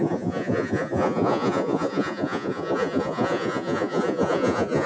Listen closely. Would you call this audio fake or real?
fake